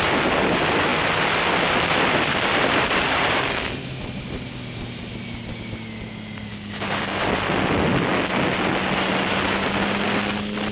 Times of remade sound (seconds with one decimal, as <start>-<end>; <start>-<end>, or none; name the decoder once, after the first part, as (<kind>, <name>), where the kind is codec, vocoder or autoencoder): 6.5-7.2 (codec, DAC)